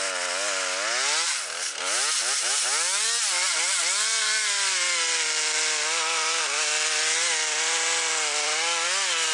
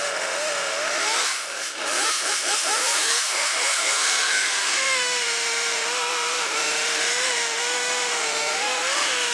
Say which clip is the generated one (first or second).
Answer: second